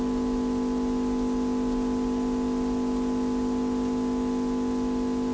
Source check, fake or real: real